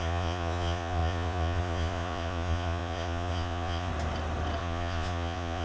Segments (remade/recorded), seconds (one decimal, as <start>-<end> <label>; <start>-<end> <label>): 0.0-3.9 remade; 3.9-4.6 recorded; 4.6-5.6 remade